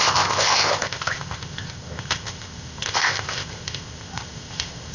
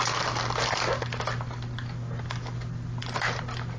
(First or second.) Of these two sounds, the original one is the second